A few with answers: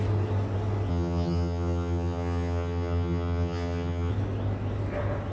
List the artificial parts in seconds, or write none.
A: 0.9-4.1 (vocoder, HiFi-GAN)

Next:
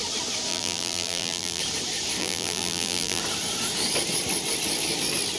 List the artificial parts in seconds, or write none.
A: 0.5-1.6 (vocoder, BigVGAN v2); 2.2-3.2

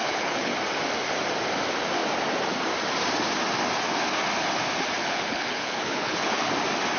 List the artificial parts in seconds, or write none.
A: 0.0-0.5 (codec, HILCodec); 5.0-6.5

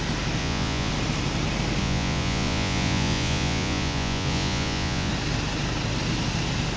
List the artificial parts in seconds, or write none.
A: 0.4-0.9 (vocoder, Vocos); 1.8-5.1

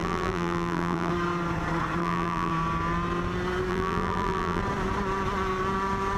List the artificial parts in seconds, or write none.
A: 0.0-1.1 (vocoder, BigVGAN v2); 2.0-2.5; 3.7-4.6